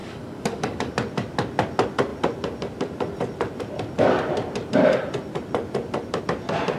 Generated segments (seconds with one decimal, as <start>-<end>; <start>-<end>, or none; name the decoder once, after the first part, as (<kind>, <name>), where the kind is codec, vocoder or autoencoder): 0.0-0.9 (codec, DAC)